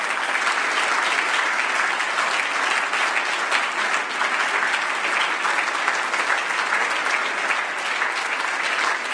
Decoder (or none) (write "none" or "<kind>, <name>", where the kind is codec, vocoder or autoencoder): none